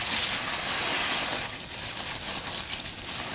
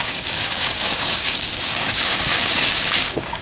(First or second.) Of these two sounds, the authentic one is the first